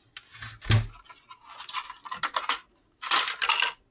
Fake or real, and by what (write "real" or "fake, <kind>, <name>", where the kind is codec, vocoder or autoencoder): real